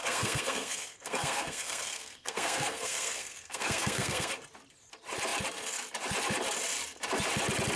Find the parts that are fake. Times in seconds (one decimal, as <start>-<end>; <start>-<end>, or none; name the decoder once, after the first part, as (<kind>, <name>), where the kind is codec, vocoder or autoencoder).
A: 0.0-4.3 (codec, SNAC)